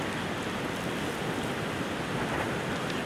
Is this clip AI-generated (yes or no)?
no